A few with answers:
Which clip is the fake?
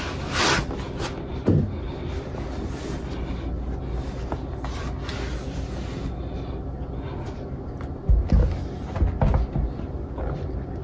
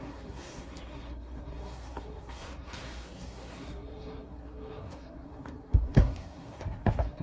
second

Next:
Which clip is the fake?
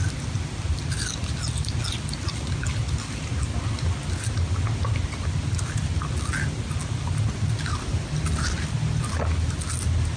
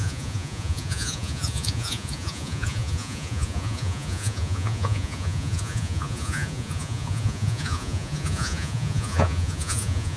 second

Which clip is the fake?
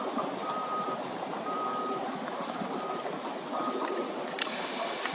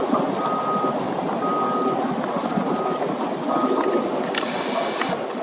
first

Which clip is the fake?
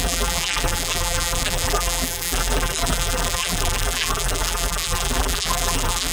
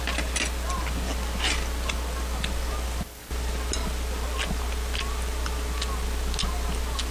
first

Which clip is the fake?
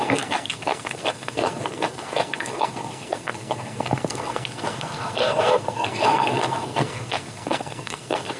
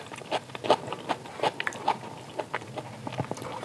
first